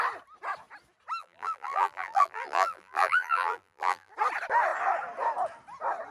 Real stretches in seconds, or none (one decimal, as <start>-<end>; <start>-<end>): 0.0-1.2; 4.1-6.1